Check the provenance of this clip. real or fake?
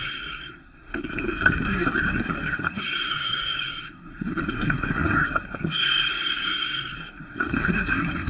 fake